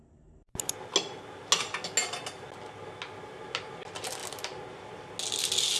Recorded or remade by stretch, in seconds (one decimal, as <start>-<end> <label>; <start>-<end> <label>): 0.0-5.8 recorded